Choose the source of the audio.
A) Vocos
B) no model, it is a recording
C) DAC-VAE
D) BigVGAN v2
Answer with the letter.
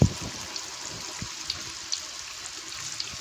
B